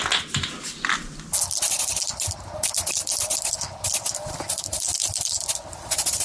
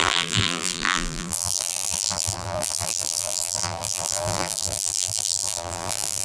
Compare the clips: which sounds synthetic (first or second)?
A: second